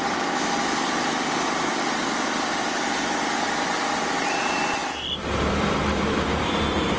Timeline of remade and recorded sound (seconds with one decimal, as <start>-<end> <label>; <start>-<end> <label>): 0.0-7.0 remade